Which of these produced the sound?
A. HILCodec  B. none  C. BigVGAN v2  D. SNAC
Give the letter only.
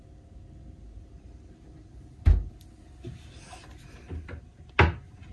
B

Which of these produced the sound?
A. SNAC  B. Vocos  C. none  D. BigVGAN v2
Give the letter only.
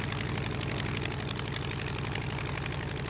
C